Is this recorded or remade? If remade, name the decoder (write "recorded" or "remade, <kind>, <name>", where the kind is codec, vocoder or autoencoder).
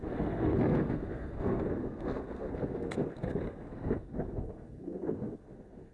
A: remade, codec, SNAC